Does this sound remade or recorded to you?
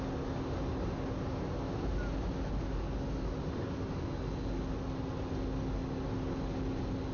recorded